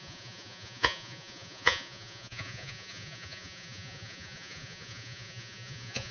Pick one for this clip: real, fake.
fake